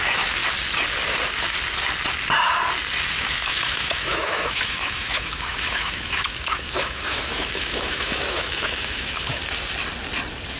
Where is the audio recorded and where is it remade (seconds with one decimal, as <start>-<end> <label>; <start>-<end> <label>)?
0.0-0.4 remade; 0.4-3.1 recorded; 3.1-9.4 remade; 9.4-10.6 recorded